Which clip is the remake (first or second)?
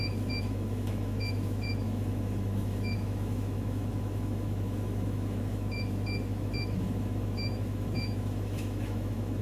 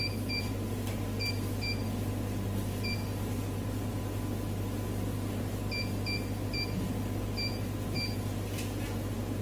first